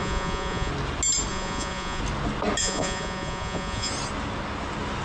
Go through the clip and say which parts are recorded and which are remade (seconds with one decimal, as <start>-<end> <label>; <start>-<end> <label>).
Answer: 0.0-0.7 remade; 0.7-1.3 recorded; 1.3-2.0 remade; 2.0-2.6 recorded; 2.6-3.9 remade; 3.9-5.0 recorded